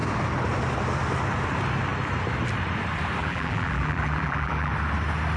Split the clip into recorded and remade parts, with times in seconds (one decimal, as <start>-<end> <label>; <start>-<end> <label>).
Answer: 0.0-3.2 recorded; 3.2-4.7 remade; 4.7-5.4 recorded